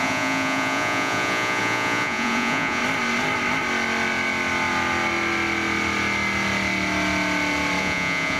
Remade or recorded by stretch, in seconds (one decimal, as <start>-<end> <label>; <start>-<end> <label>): 0.0-2.8 remade; 2.8-7.8 recorded; 7.8-8.4 remade